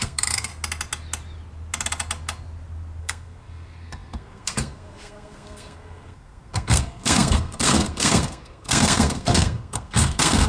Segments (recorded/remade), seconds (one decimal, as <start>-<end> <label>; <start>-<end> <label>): 0.0-0.5 remade; 0.5-3.0 recorded; 3.0-10.5 remade